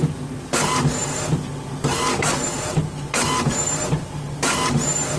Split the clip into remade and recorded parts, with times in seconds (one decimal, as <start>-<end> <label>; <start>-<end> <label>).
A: 0.0-5.2 recorded